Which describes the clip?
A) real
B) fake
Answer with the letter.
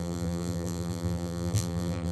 B